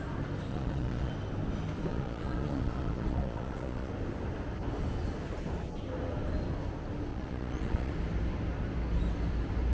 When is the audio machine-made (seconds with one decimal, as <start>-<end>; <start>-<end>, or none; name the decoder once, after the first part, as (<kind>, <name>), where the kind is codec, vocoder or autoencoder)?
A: 0.5-1.1 (vocoder, Vocos); 1.9-3.9; 7.1-7.9